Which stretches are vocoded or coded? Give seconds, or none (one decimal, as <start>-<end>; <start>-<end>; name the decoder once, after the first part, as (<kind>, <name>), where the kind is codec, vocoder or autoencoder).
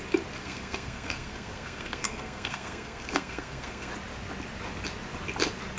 0.4-3.9 (codec, SNAC)